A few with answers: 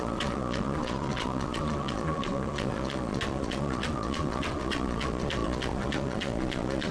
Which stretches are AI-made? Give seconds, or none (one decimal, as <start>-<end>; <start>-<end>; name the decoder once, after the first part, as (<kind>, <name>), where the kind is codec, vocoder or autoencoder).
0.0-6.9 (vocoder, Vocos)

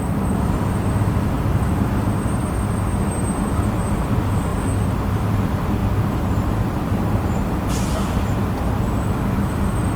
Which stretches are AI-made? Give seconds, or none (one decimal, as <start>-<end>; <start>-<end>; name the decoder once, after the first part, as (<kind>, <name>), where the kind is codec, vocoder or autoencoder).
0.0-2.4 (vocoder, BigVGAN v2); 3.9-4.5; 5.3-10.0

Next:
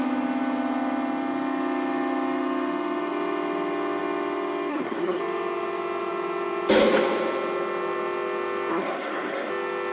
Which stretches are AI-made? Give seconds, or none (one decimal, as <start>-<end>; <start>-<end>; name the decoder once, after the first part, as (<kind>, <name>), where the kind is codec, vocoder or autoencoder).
4.7-5.2 (codec, SNAC); 8.7-9.5

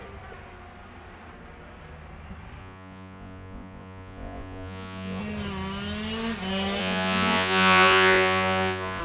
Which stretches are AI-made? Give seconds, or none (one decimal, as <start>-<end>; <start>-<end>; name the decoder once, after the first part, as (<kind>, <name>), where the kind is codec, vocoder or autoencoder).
2.6-5.2 (vocoder, Vocos); 6.8-9.0

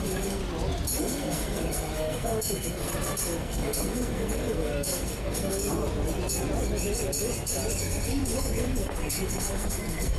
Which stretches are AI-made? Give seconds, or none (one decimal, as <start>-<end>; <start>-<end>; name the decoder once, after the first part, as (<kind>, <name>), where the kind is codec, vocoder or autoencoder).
0.0-0.4 (codec, SNAC); 1.0-5.8; 7.8-10.2

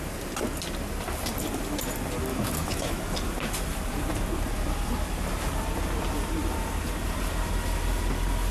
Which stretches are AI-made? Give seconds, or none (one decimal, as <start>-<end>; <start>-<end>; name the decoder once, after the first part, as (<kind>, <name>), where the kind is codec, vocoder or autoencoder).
2.3-3.0 (autoencoder, DAC-VAE)